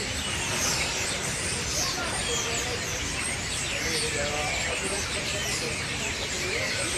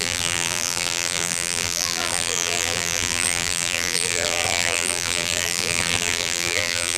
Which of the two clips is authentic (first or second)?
first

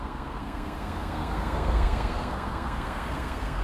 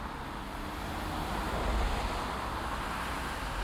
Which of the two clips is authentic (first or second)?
second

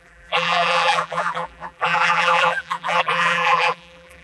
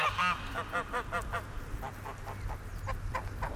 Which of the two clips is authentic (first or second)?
second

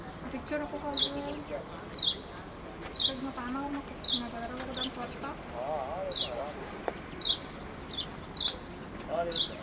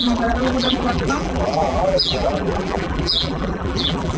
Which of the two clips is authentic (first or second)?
first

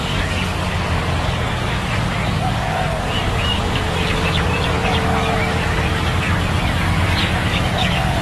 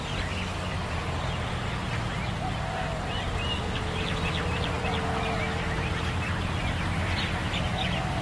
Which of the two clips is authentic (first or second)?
second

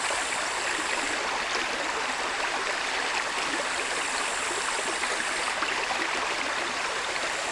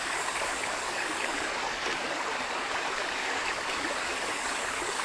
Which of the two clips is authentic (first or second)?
first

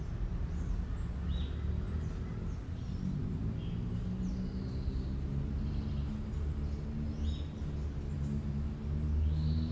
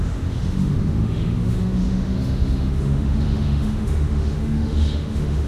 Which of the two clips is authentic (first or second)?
first